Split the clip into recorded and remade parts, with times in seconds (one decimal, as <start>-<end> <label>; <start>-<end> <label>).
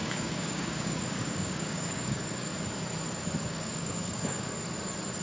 0.0-2.5 remade; 2.5-3.4 recorded; 3.4-4.5 remade; 4.5-5.2 recorded